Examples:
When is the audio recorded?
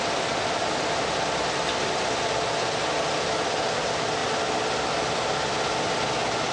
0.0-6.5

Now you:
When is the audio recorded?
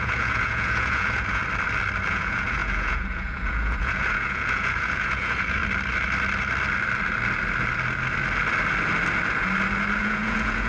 1.4-2.1; 5.6-10.0